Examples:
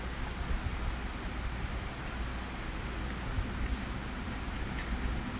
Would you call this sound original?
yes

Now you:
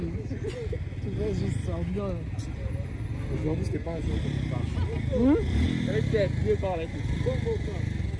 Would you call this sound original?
yes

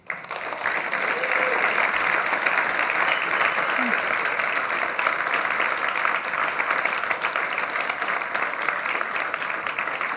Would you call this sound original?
yes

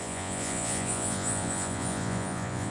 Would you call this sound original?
no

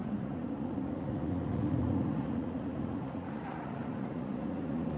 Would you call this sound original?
no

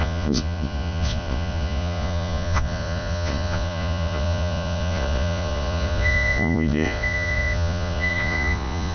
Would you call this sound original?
no